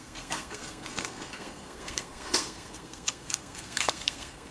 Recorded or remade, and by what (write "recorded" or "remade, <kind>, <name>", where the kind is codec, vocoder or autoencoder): remade, codec, SNAC